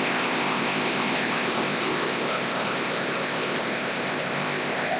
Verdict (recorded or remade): remade